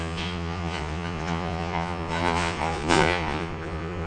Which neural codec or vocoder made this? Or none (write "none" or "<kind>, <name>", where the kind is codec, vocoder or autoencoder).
vocoder, Vocos